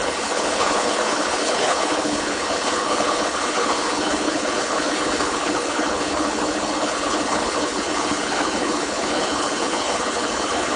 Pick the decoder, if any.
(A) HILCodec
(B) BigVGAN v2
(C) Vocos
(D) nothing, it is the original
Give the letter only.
A